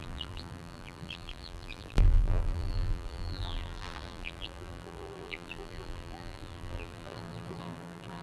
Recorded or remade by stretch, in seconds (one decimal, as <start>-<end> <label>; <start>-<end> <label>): 0.0-8.2 remade